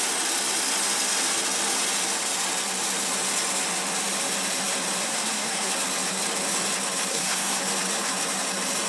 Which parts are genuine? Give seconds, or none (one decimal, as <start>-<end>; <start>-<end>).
0.0-5.0; 5.7-7.1; 7.6-8.9